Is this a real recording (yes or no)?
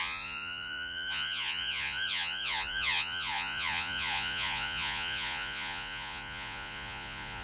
no